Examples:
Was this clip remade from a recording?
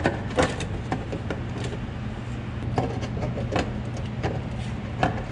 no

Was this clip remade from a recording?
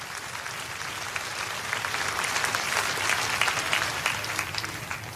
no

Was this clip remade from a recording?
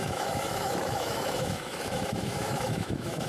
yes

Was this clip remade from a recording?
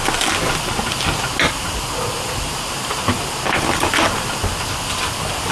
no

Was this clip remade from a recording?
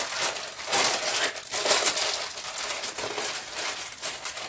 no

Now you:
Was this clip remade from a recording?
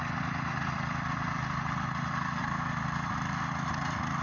no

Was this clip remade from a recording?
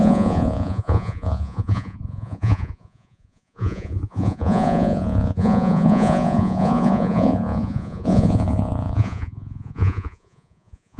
yes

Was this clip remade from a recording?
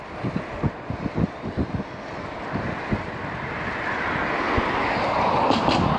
no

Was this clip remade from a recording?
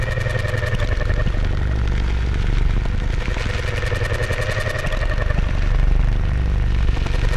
no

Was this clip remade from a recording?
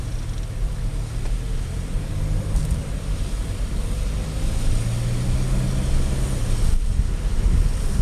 no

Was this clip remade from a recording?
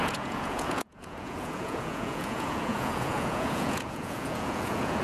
yes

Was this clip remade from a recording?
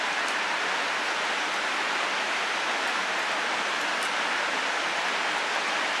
no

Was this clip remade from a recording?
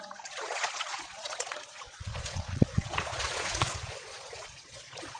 yes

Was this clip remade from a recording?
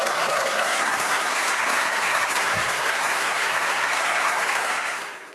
yes